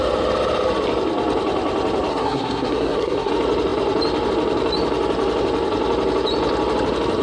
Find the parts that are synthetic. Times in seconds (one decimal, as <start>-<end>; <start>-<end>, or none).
2.1-3.3